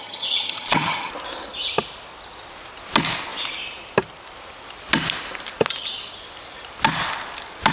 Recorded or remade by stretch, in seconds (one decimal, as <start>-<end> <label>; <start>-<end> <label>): 0.0-1.1 remade; 1.1-7.7 recorded